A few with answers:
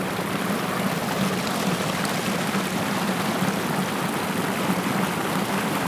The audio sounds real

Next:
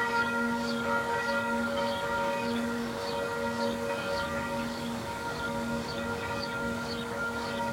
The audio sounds fake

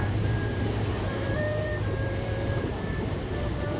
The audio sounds fake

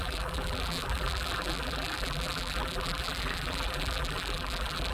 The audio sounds fake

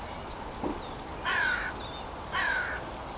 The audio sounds real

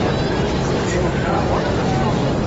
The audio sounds real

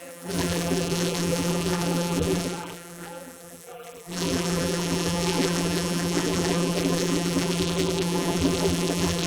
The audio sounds fake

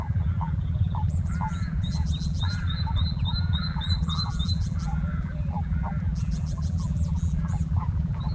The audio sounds fake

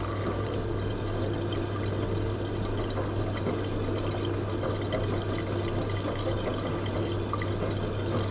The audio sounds real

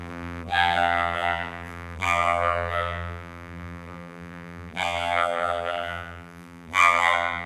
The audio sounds fake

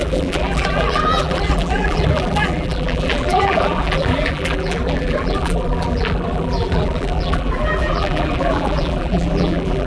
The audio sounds fake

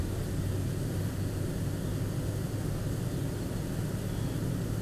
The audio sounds real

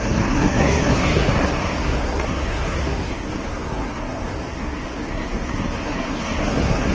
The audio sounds fake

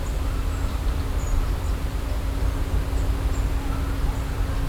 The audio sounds real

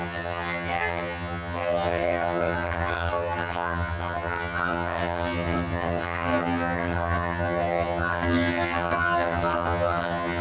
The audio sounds fake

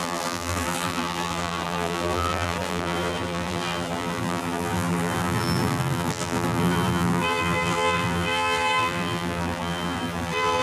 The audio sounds fake